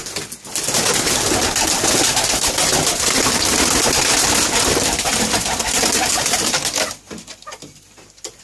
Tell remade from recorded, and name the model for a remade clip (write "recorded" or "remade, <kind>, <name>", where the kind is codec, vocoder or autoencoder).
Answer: recorded